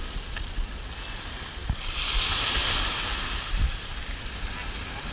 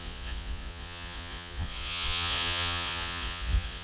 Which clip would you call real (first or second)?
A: first